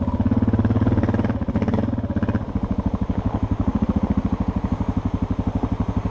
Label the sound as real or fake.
real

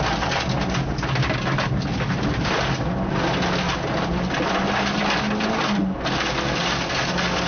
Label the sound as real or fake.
real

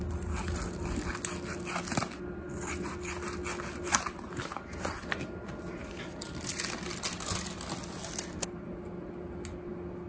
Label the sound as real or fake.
real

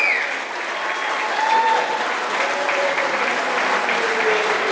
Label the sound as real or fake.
real